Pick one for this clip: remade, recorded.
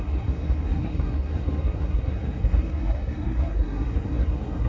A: remade